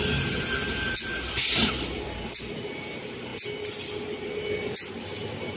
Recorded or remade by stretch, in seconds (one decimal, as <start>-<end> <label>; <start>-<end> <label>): 0.0-5.6 recorded